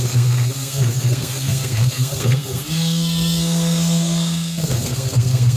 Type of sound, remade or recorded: remade